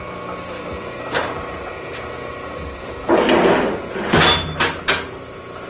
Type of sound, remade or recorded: recorded